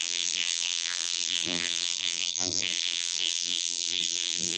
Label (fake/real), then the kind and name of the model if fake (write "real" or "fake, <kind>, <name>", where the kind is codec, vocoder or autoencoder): fake, vocoder, BigVGAN v2